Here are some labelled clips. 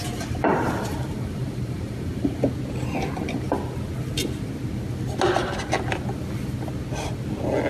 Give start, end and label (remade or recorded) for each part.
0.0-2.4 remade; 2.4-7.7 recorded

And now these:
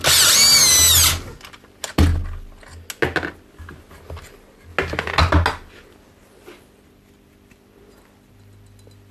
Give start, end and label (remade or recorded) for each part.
0.0-9.1 recorded